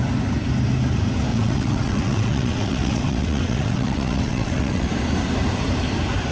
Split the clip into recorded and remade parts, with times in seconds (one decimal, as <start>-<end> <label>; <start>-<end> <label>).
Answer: 0.0-1.3 recorded; 1.3-4.9 remade; 4.9-6.3 recorded